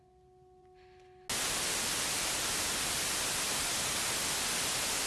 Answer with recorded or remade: recorded